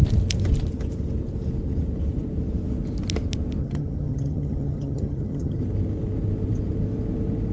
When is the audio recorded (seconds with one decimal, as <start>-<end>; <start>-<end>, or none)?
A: 0.0-3.6; 5.6-7.5

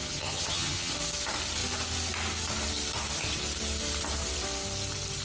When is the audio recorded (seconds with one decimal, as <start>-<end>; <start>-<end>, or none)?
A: 0.9-5.2

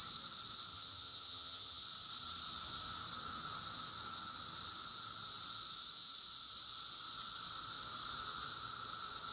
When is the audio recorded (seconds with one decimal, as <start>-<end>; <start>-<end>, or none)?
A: 0.0-0.7; 1.8-9.3

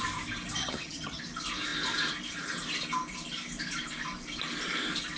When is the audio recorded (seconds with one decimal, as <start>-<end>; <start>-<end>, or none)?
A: 0.0-0.6; 1.2-5.2

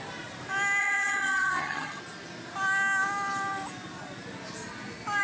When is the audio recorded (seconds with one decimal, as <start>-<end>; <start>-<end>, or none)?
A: 0.0-0.8; 2.0-5.2

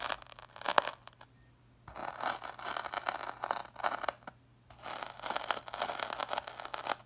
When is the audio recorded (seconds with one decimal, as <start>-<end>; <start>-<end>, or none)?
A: 0.0-7.1

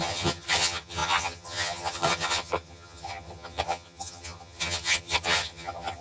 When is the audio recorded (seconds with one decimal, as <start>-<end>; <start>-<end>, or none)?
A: none